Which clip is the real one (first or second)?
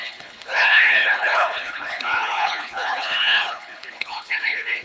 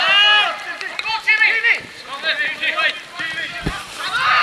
second